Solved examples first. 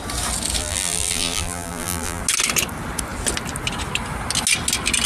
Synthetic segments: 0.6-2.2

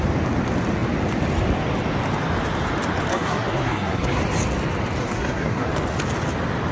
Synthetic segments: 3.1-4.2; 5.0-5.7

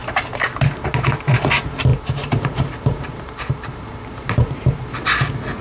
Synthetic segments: 1.9-5.0